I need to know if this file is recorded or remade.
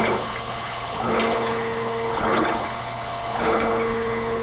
remade